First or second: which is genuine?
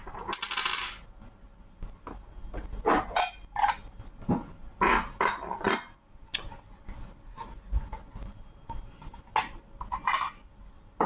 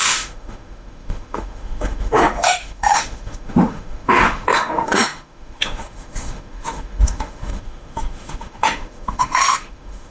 first